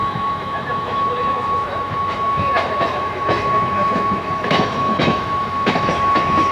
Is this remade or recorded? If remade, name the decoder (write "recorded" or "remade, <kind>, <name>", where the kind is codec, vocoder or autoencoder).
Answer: remade, autoencoder, DAC-VAE